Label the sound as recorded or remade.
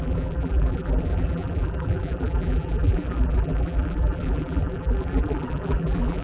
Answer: remade